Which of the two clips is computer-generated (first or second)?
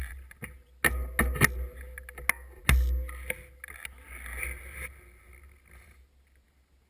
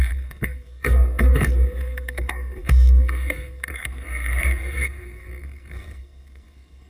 second